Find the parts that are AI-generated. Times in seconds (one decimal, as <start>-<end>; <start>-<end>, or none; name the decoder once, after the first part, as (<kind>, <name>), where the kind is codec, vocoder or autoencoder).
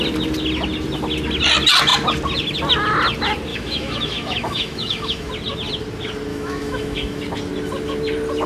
3.5-5.3 (autoencoder, DAC-VAE); 6.3-7.2